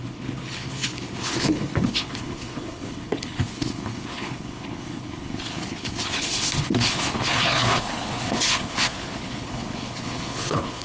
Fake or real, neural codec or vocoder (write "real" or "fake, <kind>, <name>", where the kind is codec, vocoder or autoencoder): fake, codec, HILCodec